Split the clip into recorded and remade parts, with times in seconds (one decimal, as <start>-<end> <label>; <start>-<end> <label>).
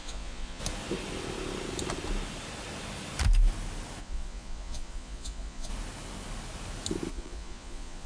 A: 0.0-0.6 remade; 0.6-4.0 recorded; 4.0-5.7 remade; 5.7-7.1 recorded; 7.1-8.1 remade